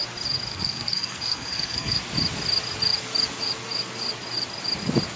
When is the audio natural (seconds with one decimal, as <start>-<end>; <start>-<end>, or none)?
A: 0.0-0.5; 2.0-5.2